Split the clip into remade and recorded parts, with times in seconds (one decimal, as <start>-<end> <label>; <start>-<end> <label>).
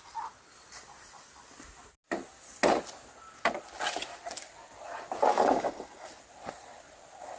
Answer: 0.0-5.3 recorded; 5.3-6.1 remade; 6.1-7.4 recorded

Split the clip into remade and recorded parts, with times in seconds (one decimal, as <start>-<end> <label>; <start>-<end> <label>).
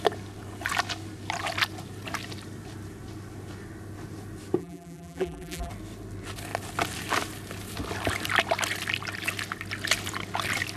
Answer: 0.0-4.6 recorded; 4.6-5.7 remade; 5.7-10.8 recorded